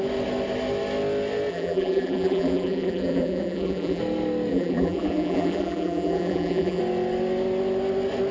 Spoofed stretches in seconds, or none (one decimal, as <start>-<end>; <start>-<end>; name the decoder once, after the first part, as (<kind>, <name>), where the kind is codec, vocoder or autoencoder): 1.5-4.0 (vocoder, BigVGAN v2); 4.5-6.8